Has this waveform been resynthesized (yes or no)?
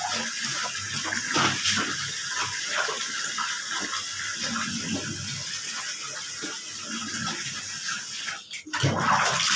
no